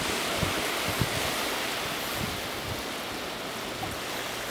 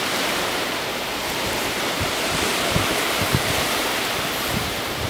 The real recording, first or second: first